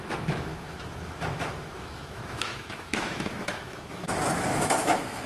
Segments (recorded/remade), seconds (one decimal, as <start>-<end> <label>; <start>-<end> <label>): 0.0-5.3 remade